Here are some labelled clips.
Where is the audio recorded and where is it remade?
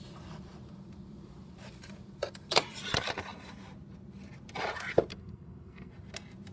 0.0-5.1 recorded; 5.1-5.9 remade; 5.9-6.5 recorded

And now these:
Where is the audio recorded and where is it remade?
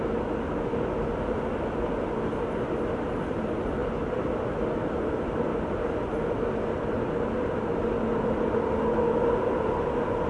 0.0-10.3 recorded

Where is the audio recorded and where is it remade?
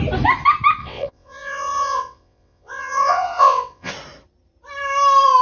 0.0-0.8 recorded; 0.8-3.9 remade; 3.9-5.4 recorded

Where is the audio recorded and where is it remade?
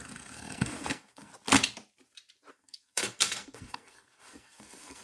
0.0-1.3 remade; 1.3-2.5 recorded; 2.5-5.0 remade